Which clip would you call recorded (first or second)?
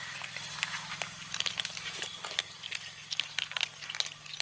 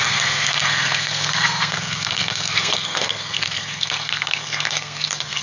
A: first